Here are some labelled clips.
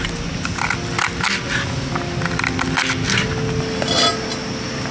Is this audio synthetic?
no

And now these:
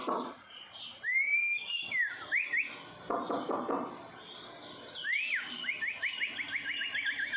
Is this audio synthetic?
no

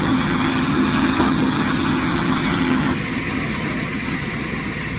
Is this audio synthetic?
yes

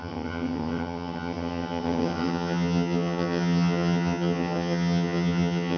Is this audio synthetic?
yes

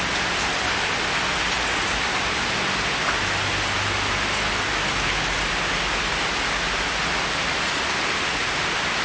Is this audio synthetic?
no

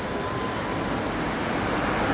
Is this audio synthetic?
no